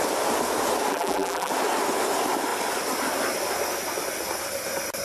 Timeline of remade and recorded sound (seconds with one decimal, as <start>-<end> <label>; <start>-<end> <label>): 0.0-0.9 recorded; 0.9-1.5 remade; 1.5-5.0 recorded